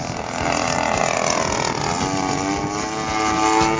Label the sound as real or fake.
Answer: real